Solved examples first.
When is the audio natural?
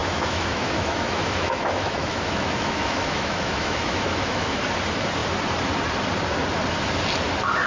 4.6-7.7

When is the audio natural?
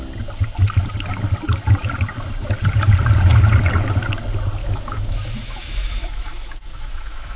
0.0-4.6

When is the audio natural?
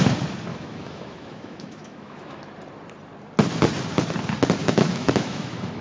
0.0-0.5; 2.4-4.6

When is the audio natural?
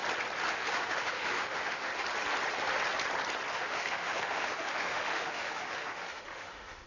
0.0-0.5; 1.9-3.5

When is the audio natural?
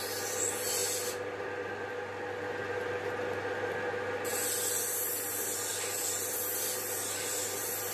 0.0-7.9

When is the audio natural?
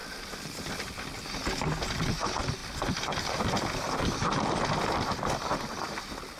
0.0-6.4